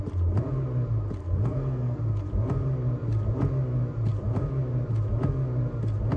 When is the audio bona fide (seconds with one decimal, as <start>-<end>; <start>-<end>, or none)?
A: 0.0-1.2; 2.0-6.2